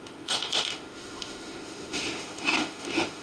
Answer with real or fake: fake